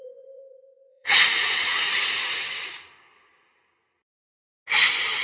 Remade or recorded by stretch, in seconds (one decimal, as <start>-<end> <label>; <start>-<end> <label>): 0.0-0.9 recorded; 0.9-2.7 remade; 2.7-5.2 recorded